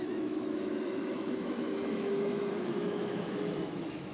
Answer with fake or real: fake